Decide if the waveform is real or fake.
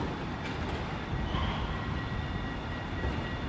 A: real